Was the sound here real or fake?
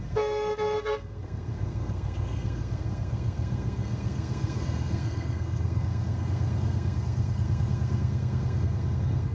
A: fake